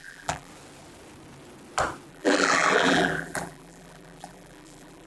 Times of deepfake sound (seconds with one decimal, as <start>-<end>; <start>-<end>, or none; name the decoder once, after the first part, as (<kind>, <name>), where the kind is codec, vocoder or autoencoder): 0.0-0.5 (vocoder, BigVGAN v2); 2.1-5.1